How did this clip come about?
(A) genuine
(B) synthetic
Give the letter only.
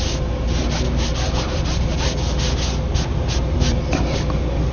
A